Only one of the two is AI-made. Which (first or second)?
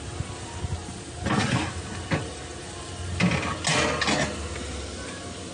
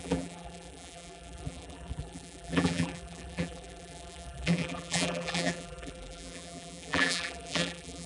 second